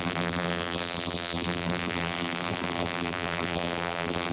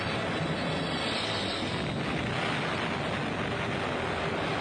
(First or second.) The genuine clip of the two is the second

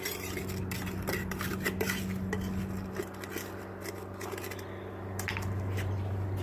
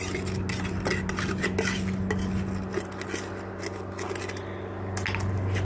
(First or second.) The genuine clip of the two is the second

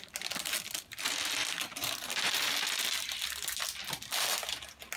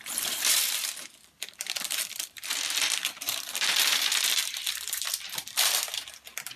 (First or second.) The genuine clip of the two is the first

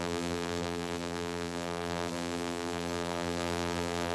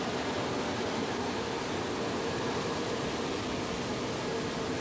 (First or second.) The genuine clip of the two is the second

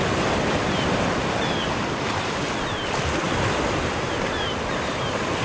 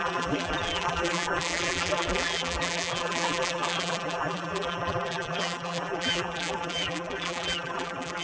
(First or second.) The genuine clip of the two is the first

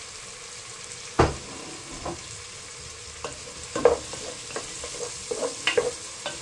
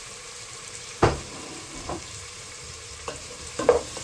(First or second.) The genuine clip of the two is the first